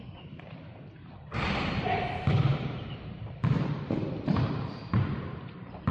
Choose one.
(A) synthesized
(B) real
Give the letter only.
A